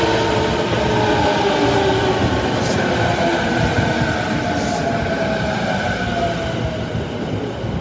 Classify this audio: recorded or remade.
recorded